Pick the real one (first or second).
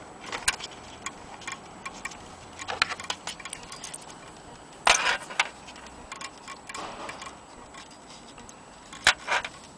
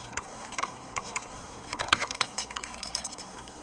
first